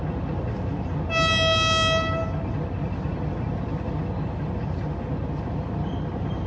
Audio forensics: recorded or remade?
recorded